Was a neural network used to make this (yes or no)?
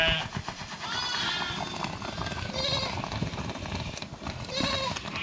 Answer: no